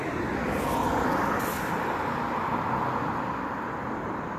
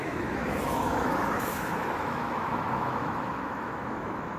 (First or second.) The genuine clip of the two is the first